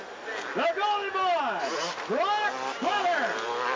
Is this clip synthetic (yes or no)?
no